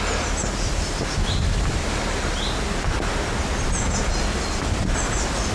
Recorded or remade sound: recorded